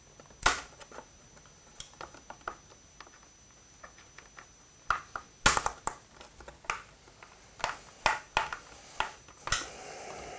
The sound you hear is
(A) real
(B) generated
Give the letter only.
A